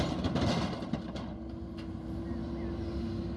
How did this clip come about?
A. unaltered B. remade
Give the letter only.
A